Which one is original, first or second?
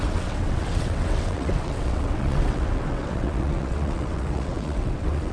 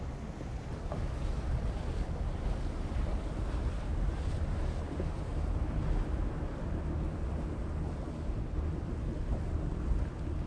second